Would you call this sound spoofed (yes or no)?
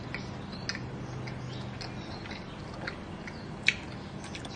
no